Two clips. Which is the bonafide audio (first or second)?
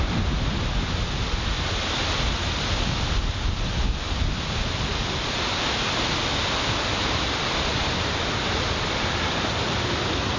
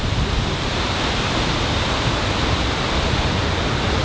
first